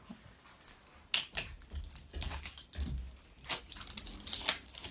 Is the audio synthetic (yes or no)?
no